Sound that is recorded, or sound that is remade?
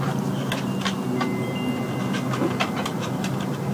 recorded